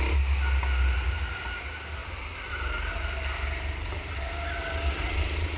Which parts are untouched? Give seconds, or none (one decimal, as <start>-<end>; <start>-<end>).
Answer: 0.0-5.6